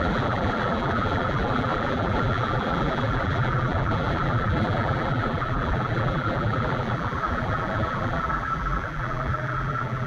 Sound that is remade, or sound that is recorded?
remade